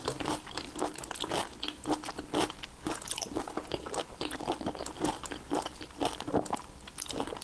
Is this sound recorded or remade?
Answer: recorded